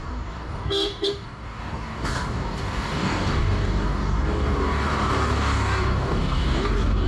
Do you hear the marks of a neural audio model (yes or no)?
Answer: yes